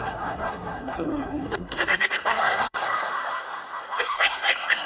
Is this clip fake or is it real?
fake